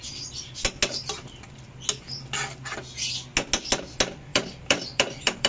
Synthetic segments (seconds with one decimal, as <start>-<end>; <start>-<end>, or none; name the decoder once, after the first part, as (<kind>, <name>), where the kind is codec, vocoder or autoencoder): 4.3-5.5 (vocoder, BigVGAN v2)